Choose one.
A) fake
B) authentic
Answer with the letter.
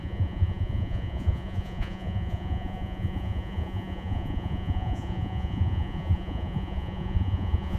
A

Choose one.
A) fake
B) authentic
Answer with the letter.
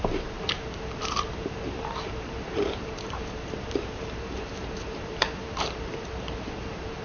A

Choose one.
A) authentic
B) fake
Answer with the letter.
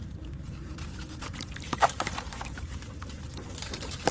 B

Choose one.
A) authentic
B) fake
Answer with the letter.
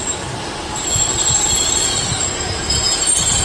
B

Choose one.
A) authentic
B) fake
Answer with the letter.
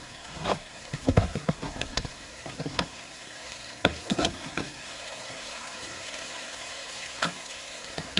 B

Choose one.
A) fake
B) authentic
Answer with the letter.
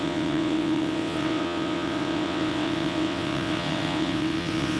A